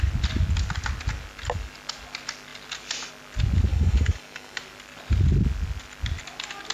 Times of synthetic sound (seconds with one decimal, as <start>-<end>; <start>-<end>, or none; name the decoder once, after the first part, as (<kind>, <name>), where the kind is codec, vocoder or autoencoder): 3.7-4.6 (codec, DAC)